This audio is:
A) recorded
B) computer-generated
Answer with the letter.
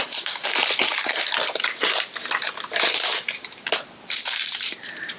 B